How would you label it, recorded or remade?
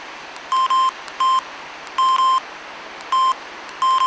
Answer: recorded